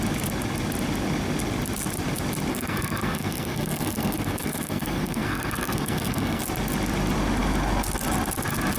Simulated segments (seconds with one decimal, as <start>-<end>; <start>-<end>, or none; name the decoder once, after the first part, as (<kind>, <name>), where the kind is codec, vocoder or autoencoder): 2.5-6.4 (codec, SNAC)